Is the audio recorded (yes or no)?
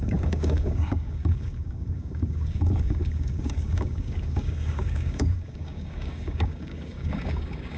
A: no